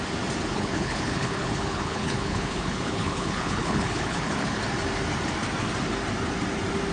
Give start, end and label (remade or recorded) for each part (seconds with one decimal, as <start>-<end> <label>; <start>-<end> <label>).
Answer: 0.0-0.5 recorded; 0.5-4.6 remade; 4.6-6.9 recorded